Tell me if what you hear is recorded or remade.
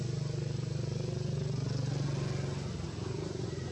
recorded